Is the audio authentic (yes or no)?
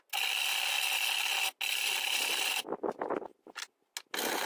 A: yes